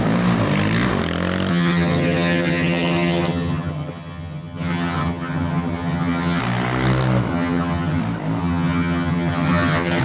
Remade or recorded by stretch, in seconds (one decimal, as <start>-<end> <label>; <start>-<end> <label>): 0.0-1.5 recorded; 1.5-6.4 remade; 6.4-7.3 recorded; 7.3-8.0 remade; 8.0-8.4 recorded; 8.4-10.0 remade